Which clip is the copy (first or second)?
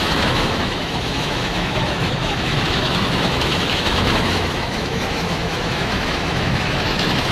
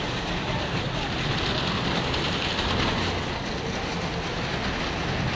first